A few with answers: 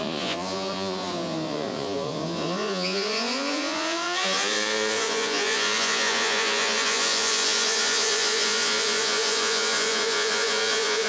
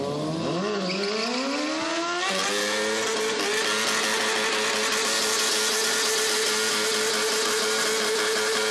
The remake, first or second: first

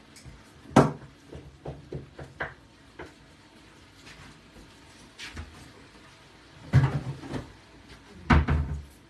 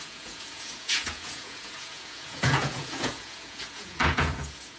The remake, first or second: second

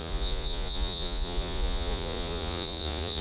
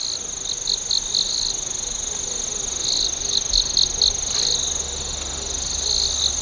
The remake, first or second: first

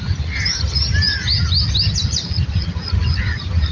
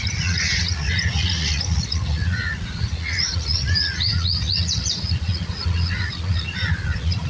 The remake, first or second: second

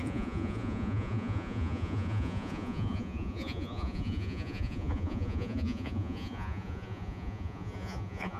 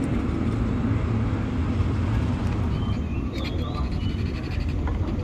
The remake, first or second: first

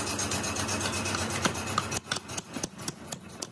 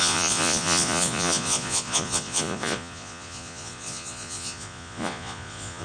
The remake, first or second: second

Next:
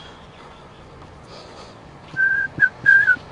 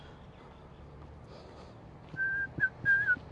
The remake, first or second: first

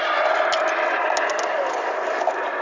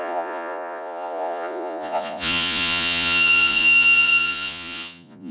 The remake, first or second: second